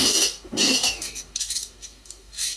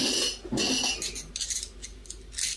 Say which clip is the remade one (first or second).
first